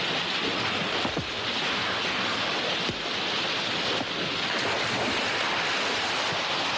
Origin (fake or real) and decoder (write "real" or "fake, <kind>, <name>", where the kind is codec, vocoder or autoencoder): real